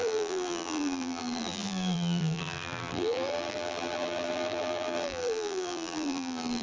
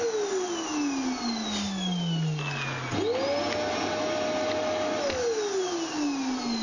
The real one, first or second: second